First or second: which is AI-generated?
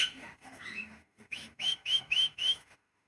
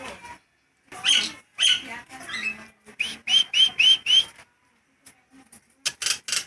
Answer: first